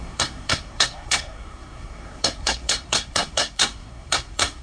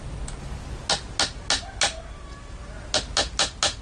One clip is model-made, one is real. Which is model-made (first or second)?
first